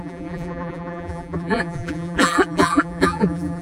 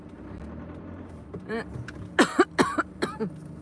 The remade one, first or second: first